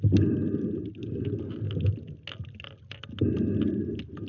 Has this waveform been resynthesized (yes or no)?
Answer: no